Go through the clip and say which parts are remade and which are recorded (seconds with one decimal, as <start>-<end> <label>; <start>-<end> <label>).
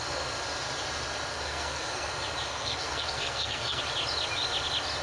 0.0-1.3 recorded; 1.3-2.1 remade; 2.1-2.5 recorded; 2.5-3.8 remade; 3.8-5.0 recorded